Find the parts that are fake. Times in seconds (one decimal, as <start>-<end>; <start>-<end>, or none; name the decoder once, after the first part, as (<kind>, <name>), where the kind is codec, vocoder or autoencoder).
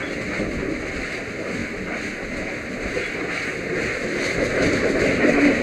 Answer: none